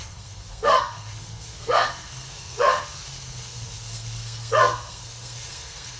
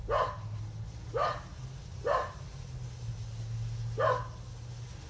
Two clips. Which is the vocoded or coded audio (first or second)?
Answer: first